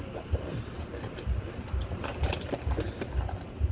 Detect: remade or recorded recorded